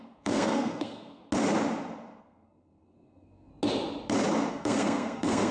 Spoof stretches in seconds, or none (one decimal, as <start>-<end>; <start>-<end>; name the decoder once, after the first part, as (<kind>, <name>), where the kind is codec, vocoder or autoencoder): 0.0-1.2 (codec, SNAC); 2.2-3.5; 4.5-5.5